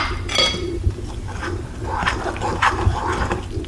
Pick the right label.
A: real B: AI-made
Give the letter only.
B